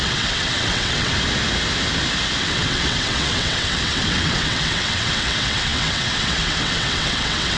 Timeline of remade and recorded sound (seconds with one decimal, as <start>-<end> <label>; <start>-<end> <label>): 0.0-1.1 remade; 1.1-2.4 recorded; 2.4-7.6 remade